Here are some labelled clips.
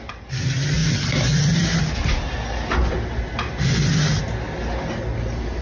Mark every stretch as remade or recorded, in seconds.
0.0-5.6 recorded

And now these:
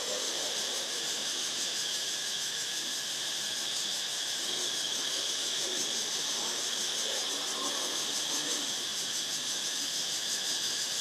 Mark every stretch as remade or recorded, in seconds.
0.0-7.2 remade; 7.2-7.7 recorded; 7.7-11.0 remade

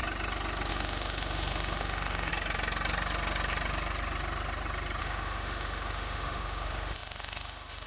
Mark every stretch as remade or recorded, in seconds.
0.0-0.7 recorded; 0.7-2.3 remade; 2.3-5.0 recorded; 5.0-7.9 remade

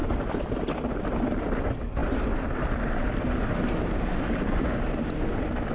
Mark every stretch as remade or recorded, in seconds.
0.0-0.6 remade; 0.6-5.7 recorded

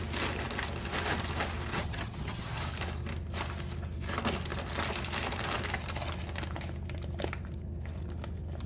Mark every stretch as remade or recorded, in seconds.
0.0-1.7 recorded; 1.7-2.6 remade; 2.6-8.7 recorded